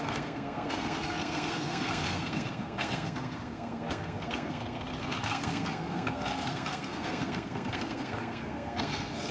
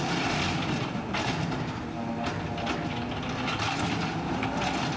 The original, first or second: second